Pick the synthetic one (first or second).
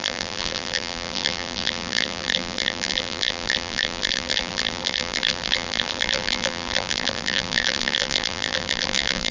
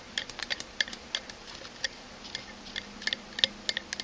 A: first